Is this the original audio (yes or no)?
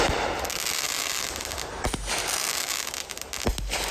yes